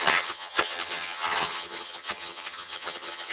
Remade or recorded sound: remade